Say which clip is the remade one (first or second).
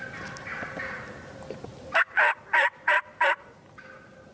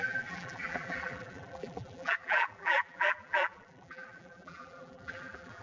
second